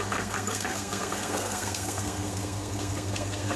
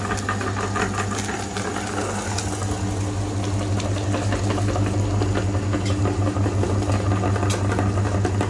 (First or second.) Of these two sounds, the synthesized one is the first